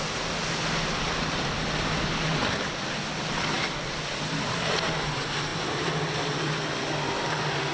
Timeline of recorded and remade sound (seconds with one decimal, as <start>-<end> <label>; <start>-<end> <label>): 0.0-7.7 recorded